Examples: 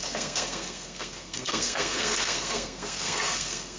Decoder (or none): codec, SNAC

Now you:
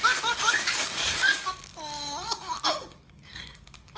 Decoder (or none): codec, DAC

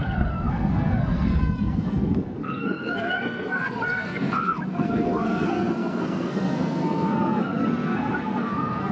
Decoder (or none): codec, SNAC